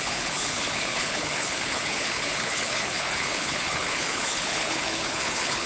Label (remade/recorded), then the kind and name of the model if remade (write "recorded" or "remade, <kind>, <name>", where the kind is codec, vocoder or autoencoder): remade, codec, HILCodec